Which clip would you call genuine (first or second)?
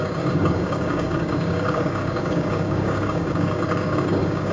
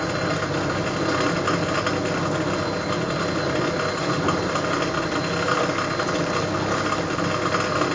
second